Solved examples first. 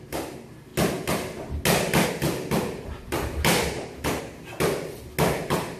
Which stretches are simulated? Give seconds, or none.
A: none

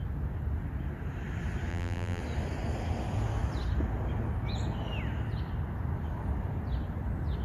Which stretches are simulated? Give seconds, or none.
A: 1.7-2.2 (vocoder, BigVGAN v2)

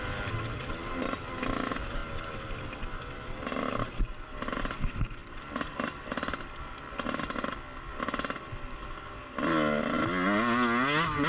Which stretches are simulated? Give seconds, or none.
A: none

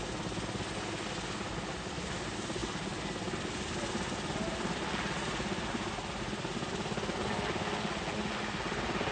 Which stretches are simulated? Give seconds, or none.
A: none

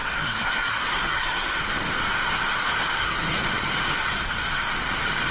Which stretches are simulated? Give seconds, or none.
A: 0.0-1.6 (codec, SNAC); 3.0-3.4